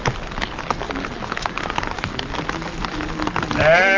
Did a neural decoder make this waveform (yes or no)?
no